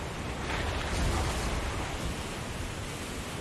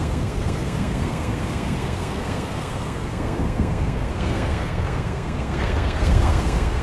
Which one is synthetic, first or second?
second